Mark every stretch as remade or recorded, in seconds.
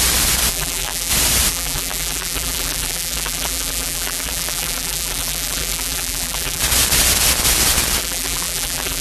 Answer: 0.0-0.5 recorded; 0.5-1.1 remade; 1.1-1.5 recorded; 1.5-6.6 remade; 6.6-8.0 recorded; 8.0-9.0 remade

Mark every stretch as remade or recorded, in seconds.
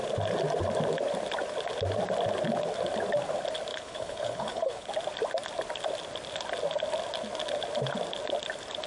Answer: 0.0-3.7 recorded; 3.7-4.9 remade; 4.9-8.9 recorded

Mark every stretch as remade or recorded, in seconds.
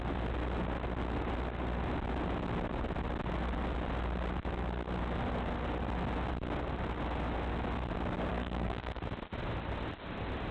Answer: 0.0-8.3 recorded; 8.3-9.0 remade; 9.0-10.5 recorded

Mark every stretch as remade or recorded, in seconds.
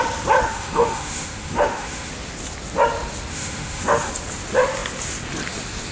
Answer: 0.0-0.4 recorded; 0.4-2.1 remade; 2.1-3.3 recorded; 3.3-4.1 remade; 4.1-5.9 recorded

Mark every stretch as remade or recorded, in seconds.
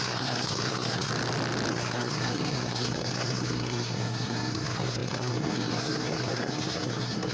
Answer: 0.0-1.1 remade; 1.1-1.7 recorded; 1.7-7.3 remade